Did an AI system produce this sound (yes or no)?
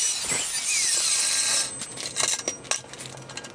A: no